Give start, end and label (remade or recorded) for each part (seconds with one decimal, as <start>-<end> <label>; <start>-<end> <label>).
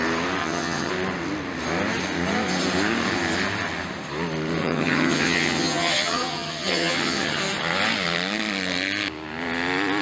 0.0-0.4 recorded; 0.4-0.9 remade; 0.9-4.6 recorded; 4.6-7.4 remade; 7.4-10.0 recorded